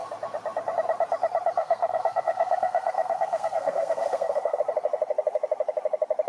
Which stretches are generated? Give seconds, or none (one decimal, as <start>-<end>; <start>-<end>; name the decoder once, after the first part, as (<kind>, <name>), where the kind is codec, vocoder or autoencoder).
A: 1.6-4.6 (codec, SNAC)